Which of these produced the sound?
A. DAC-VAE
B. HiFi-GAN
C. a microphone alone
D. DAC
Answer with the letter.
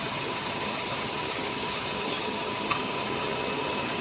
B